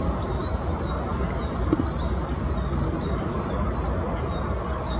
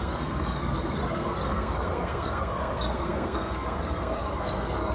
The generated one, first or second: second